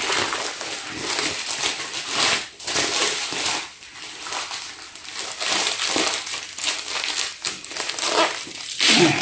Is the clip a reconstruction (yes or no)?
no